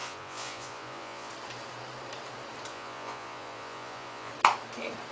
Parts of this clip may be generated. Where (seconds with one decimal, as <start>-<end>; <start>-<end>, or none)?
0.0-1.3; 2.7-4.3